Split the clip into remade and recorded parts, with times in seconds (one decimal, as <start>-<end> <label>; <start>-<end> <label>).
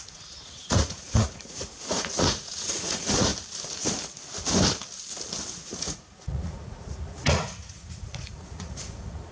0.0-3.3 remade; 3.3-5.5 recorded; 5.5-9.3 remade